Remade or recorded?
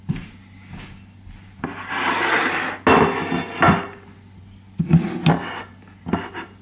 recorded